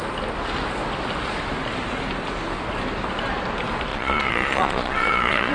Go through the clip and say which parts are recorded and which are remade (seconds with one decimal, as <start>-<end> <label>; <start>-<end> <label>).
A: 0.0-3.9 recorded; 3.9-5.5 remade